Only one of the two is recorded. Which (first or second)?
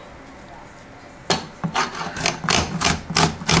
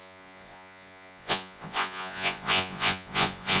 first